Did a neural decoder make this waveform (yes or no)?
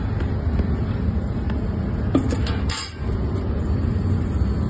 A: no